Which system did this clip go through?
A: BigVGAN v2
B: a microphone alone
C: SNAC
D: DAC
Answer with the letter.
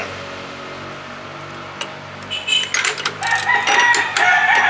B